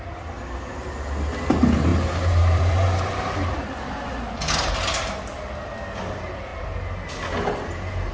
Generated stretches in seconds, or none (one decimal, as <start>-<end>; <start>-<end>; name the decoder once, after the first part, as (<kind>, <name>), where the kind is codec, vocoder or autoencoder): 1.9-3.7 (vocoder, BigVGAN v2); 6.5-7.1